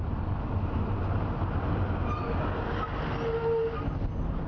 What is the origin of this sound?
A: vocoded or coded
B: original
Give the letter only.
B